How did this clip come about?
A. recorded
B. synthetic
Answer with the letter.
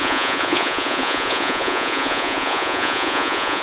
B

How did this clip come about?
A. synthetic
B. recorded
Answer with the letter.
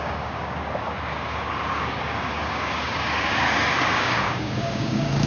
A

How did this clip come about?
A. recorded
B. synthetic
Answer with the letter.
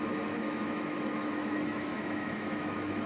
B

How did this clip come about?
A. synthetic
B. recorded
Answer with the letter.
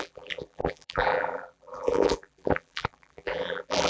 A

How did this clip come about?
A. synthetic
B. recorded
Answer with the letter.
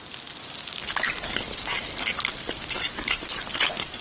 B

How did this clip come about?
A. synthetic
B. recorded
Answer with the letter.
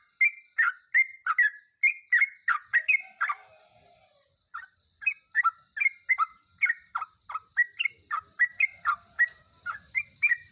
B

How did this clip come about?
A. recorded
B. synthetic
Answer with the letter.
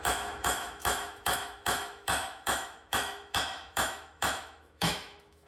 B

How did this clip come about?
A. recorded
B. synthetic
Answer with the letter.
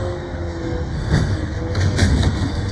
B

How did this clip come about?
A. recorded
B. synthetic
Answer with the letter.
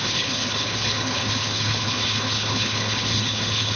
B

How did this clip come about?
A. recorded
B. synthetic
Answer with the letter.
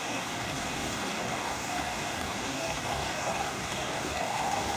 B